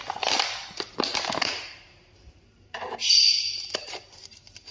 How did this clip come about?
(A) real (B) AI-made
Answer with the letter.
B